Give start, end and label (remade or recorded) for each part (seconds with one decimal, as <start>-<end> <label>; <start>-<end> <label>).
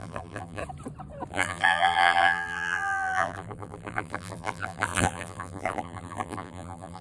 0.0-0.6 remade; 0.6-1.3 recorded; 1.3-7.0 remade